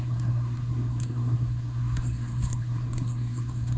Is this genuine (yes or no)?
no